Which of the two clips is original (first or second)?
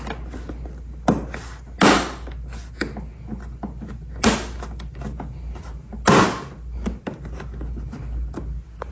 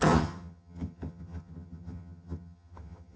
first